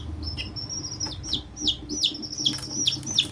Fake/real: real